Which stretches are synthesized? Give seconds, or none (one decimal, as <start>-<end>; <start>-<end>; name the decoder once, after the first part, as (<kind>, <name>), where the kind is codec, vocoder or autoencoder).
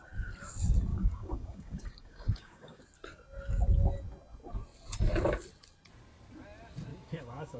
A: 0.9-2.8 (codec, DAC); 6.9-7.6